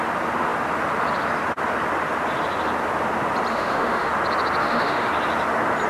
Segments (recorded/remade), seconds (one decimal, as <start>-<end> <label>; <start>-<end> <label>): 0.0-3.5 recorded; 3.5-4.1 remade; 4.1-4.6 recorded; 4.6-5.1 remade; 5.1-5.9 recorded